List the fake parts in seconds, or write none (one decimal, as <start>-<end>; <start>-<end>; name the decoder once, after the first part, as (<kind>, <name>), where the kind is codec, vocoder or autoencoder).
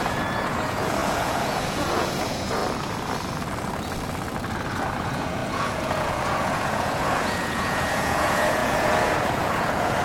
0.0-2.6 (vocoder, Vocos); 5.0-10.0